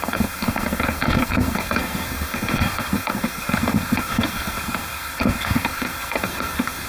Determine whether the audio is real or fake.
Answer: fake